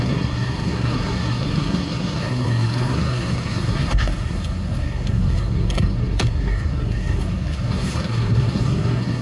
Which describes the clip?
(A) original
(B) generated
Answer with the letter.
B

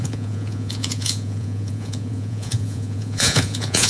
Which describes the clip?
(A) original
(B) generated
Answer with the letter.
B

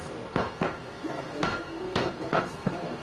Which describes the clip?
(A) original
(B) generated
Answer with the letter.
B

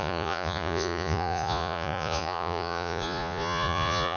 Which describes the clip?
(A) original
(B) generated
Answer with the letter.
B